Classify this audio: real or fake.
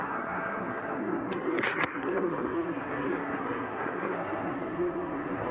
fake